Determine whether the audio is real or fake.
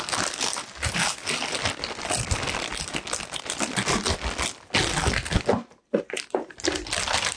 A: real